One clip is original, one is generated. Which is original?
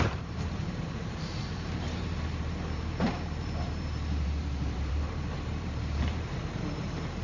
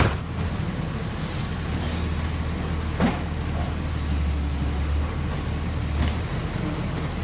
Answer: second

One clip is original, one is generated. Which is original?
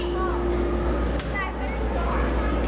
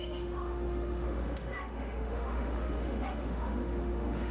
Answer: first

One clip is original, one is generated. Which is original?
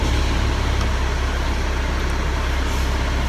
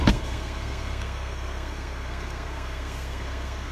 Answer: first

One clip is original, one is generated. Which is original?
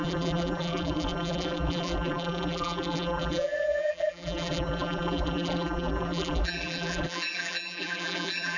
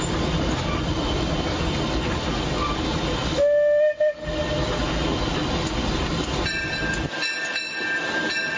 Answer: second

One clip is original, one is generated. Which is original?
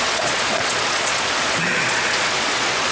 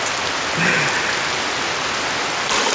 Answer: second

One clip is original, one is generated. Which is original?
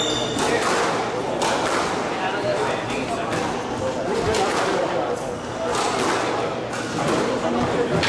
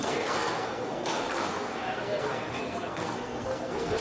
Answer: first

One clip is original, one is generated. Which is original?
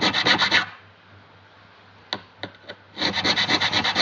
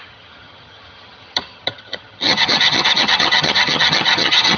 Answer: first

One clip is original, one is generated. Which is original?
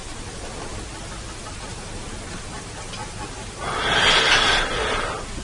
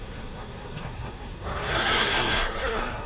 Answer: first